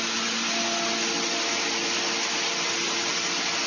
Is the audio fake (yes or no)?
no